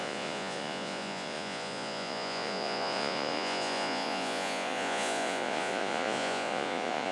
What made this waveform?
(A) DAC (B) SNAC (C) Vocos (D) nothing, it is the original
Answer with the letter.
C